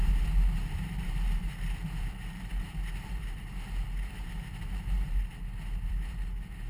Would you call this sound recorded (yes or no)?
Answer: no